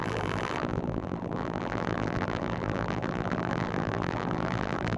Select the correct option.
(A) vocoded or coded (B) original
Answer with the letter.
A